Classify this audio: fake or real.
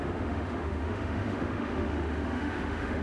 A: fake